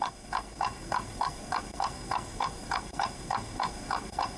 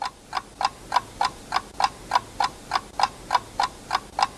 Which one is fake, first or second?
first